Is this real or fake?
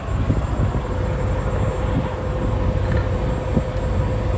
real